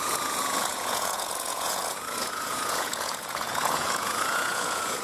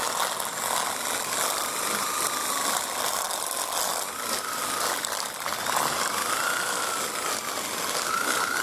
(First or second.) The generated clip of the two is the first